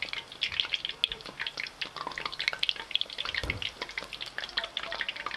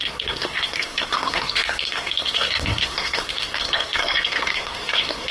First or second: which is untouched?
first